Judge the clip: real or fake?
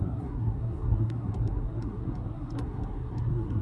fake